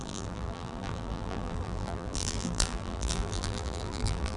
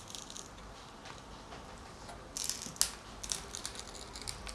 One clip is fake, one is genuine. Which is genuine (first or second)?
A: second